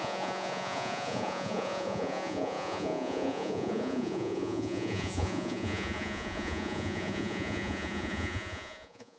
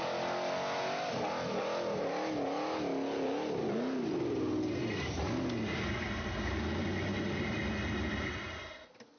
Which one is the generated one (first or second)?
first